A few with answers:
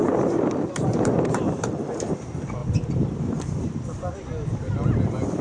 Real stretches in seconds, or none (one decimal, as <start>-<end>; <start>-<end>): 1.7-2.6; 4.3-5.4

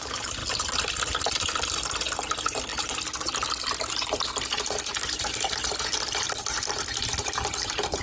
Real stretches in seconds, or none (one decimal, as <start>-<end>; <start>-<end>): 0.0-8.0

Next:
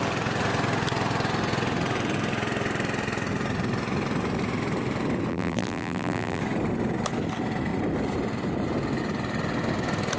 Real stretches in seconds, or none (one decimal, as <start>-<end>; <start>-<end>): 0.0-5.3; 6.4-10.2